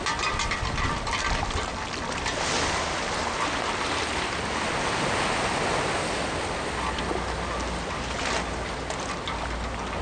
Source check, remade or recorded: recorded